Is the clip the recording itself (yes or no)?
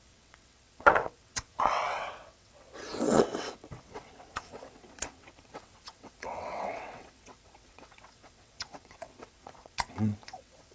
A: no